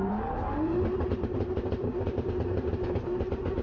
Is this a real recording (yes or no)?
no